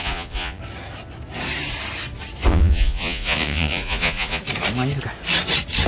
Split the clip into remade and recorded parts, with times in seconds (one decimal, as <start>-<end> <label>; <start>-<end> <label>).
0.0-0.6 remade; 0.6-2.5 recorded; 2.5-4.4 remade; 4.4-5.9 recorded